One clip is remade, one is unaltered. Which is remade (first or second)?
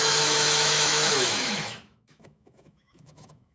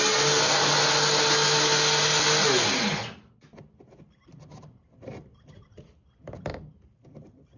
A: first